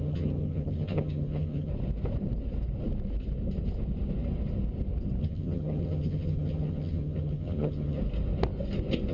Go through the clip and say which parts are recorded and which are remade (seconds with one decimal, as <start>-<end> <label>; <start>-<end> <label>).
0.0-1.7 remade; 1.7-5.2 recorded; 5.2-8.0 remade; 8.0-9.1 recorded